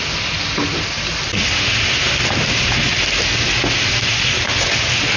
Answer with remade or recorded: recorded